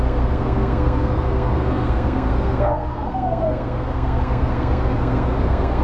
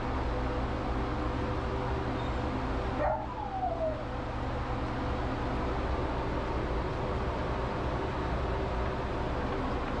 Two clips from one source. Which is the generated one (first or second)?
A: first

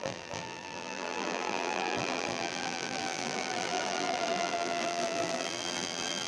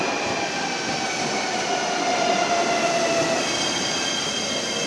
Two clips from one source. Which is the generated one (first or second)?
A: first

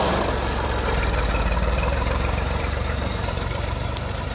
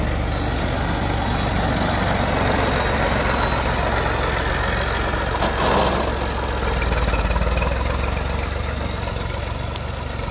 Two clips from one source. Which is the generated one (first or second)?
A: first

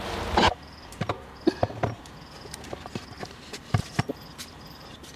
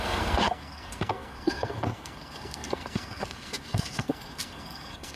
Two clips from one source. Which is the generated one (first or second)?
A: second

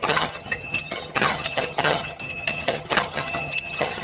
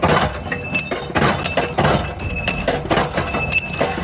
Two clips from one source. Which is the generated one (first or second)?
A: first